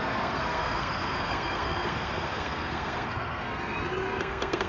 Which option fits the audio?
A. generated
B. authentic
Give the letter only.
A